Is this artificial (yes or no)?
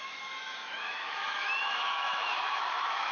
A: yes